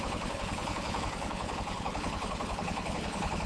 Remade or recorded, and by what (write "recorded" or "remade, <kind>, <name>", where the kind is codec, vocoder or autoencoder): remade, codec, HILCodec